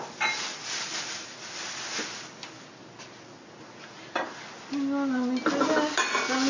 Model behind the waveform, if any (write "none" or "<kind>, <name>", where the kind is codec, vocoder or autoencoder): none